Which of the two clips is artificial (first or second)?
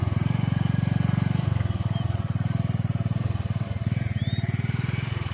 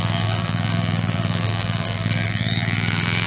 second